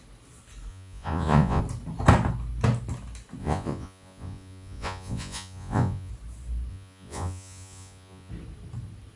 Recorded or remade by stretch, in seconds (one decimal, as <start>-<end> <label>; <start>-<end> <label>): 0.0-0.7 recorded; 0.7-1.6 remade; 1.6-3.4 recorded; 3.4-6.1 remade; 6.1-6.7 recorded; 6.7-8.3 remade; 8.3-9.2 recorded